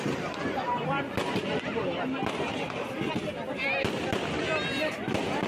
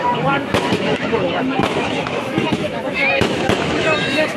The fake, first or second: second